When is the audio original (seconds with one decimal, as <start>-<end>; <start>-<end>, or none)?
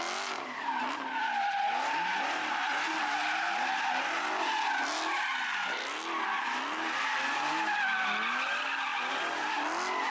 0.0-10.1